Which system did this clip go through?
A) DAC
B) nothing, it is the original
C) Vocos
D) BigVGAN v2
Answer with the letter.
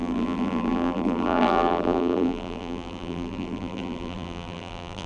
D